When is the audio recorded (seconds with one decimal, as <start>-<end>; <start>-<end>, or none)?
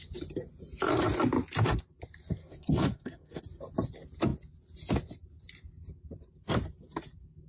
0.0-2.4; 3.4-7.5